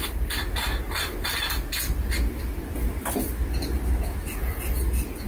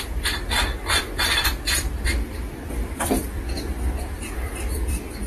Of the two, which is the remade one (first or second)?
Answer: second